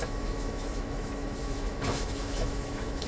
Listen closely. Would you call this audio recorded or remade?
remade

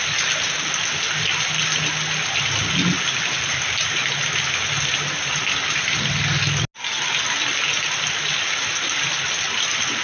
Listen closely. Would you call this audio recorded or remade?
recorded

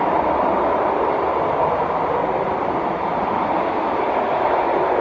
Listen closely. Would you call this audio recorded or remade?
recorded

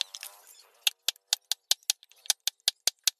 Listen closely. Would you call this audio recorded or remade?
recorded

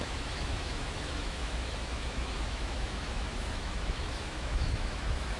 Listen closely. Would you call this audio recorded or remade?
remade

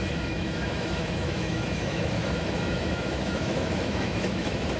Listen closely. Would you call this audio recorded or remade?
remade